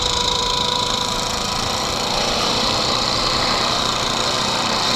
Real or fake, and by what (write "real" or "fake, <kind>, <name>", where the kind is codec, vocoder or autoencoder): fake, vocoder, BigVGAN v2